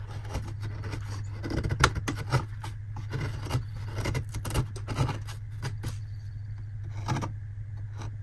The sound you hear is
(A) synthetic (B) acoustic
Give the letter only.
B